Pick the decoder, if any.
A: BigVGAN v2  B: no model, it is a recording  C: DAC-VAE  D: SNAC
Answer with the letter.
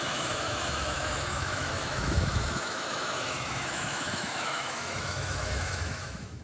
C